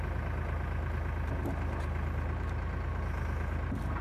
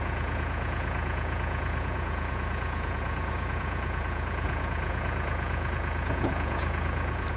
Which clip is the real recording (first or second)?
first